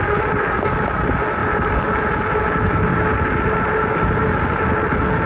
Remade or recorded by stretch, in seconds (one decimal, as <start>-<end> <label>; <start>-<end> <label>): 0.0-5.3 recorded